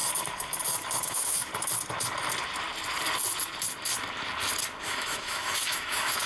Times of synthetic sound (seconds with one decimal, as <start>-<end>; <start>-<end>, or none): 1.0-1.5; 4.8-6.3